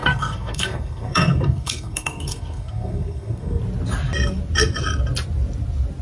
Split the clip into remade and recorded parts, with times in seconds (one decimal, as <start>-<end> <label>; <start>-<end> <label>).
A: 0.0-3.6 remade; 3.6-6.0 recorded